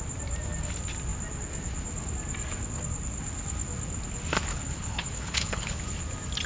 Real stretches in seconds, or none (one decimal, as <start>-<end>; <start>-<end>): 0.0-4.5; 5.8-6.5